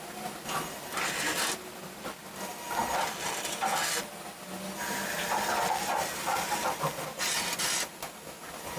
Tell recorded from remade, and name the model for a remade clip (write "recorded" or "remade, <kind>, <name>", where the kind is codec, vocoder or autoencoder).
recorded